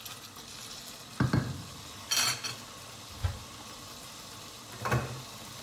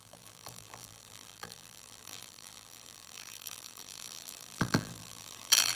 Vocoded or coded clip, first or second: second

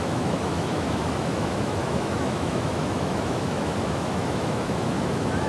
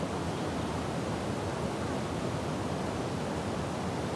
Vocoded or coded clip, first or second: first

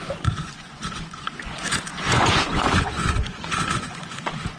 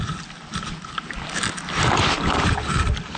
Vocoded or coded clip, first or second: first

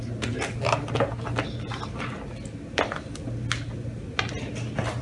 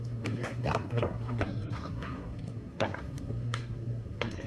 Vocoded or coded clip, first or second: second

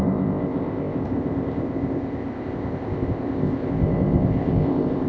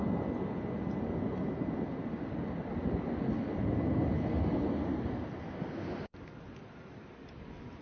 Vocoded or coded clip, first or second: first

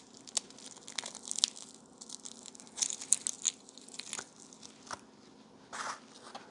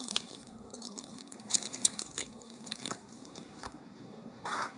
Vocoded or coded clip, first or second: second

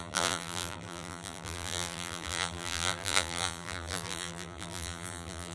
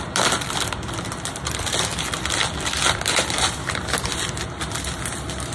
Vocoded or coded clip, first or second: first